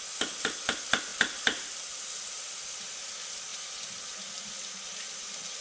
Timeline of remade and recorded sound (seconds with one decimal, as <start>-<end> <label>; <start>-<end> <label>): 0.0-1.1 recorded; 1.1-2.8 remade; 2.8-5.6 recorded